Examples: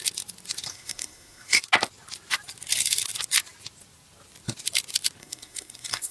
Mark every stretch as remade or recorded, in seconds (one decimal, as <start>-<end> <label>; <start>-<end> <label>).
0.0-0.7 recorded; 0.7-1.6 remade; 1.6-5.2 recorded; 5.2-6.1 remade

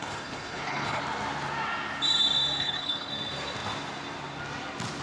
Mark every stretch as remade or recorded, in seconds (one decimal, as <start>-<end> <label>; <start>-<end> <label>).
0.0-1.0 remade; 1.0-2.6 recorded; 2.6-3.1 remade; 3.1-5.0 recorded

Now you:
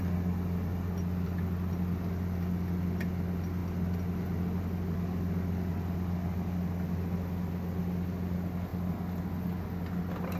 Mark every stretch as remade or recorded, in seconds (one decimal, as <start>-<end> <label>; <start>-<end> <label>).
0.0-10.4 recorded

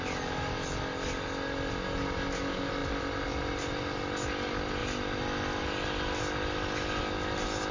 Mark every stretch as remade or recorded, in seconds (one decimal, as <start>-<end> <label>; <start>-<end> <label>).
0.0-7.7 recorded